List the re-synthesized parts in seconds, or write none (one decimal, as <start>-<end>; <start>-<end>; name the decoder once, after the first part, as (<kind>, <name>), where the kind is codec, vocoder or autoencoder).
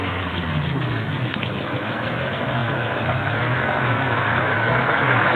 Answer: 0.0-5.4 (codec, SNAC)